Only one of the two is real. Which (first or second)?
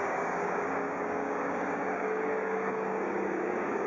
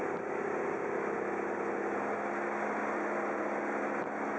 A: second